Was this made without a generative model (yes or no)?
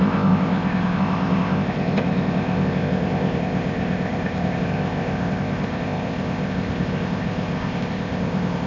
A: no